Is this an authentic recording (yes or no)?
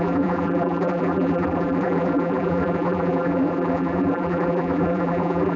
no